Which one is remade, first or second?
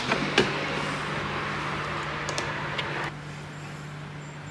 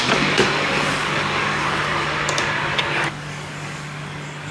second